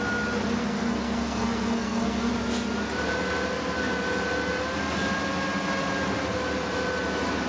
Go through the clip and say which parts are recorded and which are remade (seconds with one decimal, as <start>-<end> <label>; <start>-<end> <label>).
0.0-0.6 recorded; 0.6-2.3 remade; 2.3-7.5 recorded